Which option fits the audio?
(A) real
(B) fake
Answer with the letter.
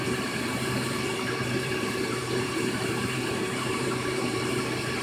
B